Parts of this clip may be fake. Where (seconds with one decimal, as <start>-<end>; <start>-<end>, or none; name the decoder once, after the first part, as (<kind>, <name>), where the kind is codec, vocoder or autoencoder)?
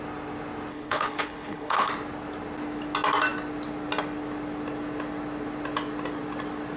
0.7-1.9 (codec, HILCodec)